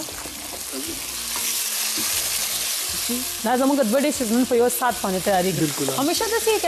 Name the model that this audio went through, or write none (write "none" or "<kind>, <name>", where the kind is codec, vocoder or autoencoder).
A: none